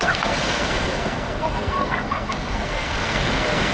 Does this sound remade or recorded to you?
remade